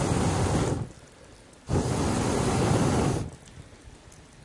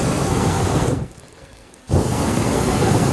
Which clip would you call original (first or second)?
first